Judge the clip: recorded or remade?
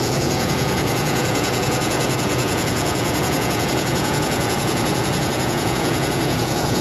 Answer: remade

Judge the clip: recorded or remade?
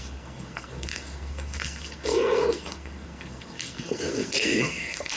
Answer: remade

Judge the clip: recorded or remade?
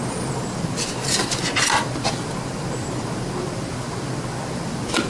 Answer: recorded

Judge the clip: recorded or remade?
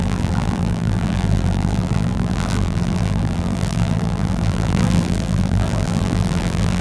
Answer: remade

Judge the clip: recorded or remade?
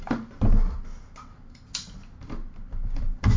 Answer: recorded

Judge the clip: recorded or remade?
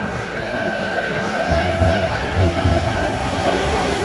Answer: remade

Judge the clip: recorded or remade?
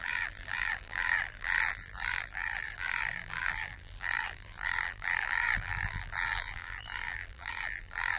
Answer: remade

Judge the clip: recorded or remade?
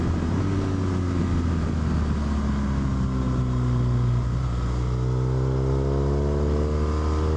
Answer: recorded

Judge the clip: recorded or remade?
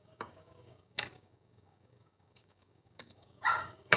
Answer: remade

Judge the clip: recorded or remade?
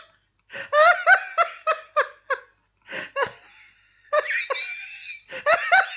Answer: recorded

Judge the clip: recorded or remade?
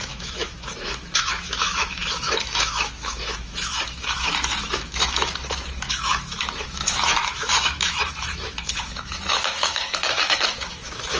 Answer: remade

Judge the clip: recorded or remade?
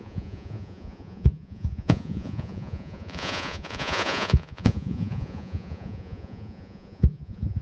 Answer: remade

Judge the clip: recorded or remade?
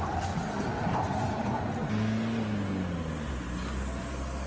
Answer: recorded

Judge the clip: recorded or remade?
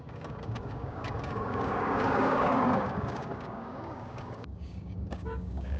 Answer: remade